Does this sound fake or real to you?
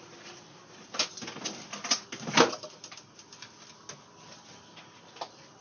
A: real